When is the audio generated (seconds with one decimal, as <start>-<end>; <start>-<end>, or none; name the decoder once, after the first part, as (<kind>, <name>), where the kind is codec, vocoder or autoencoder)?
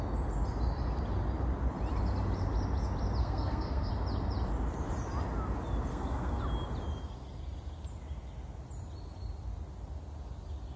3.2-3.9 (codec, SNAC); 5.9-6.4